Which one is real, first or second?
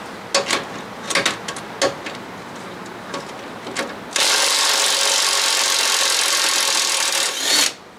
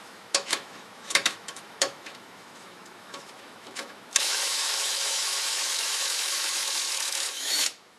first